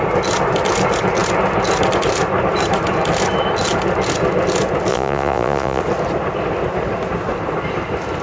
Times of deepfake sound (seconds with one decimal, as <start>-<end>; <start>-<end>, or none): 4.9-5.8